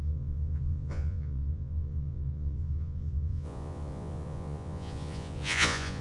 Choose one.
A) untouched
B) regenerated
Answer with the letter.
B